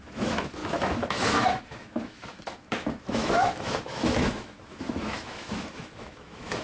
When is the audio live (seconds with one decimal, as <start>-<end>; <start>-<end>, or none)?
none